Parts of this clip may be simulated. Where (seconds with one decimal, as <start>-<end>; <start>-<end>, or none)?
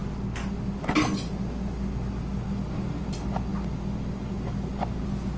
none